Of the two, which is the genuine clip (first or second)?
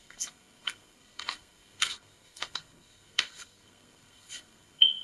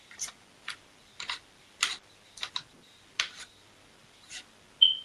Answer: second